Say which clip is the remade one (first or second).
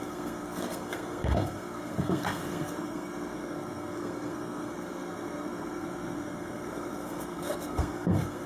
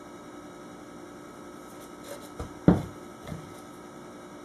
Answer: first